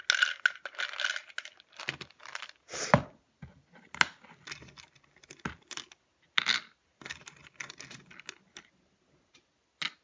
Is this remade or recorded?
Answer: recorded